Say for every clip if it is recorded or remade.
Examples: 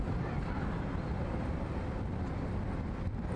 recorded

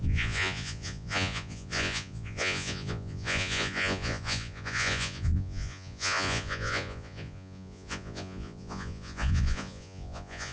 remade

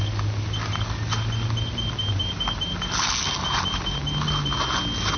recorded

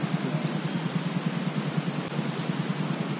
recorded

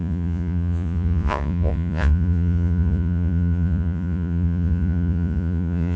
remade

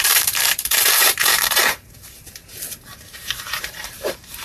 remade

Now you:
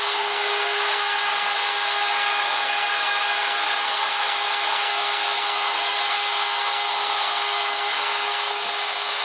remade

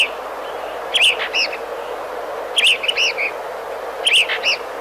recorded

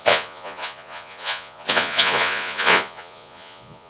remade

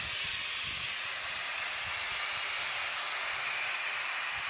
recorded